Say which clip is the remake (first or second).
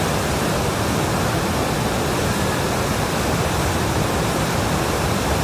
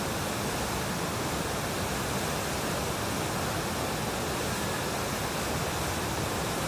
first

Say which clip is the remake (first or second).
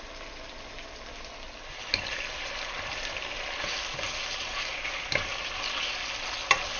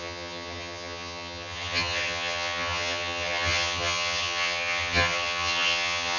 second